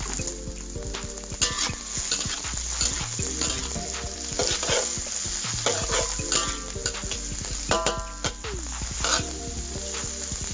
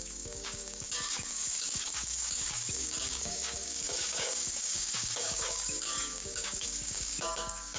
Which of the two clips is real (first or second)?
first